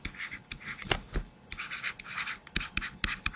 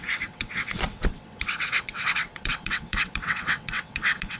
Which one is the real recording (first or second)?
first